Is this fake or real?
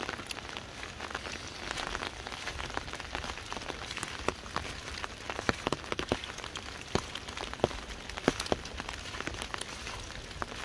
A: real